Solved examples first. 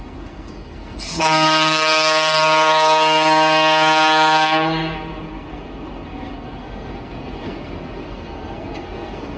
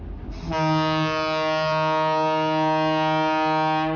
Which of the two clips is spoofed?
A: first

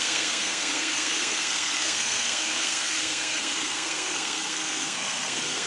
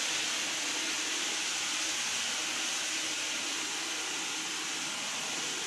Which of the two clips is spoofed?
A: first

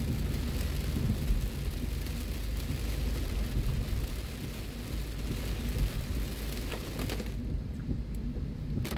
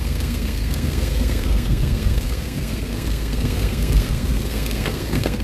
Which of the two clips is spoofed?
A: second